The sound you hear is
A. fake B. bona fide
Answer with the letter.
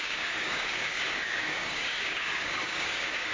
A